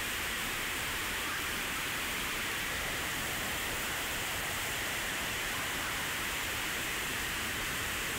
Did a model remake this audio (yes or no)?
yes